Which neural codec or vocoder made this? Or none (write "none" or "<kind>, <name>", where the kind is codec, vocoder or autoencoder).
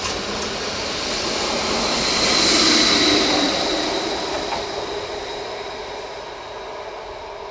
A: none